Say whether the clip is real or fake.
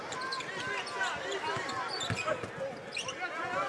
real